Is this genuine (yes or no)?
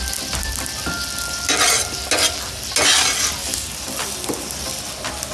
yes